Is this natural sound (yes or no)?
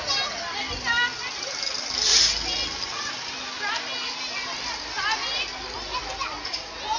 yes